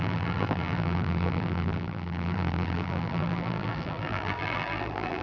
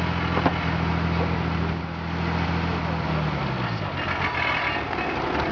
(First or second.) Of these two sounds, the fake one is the first